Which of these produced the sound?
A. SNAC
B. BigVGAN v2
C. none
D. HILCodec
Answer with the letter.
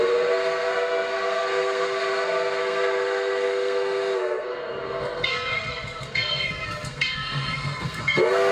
A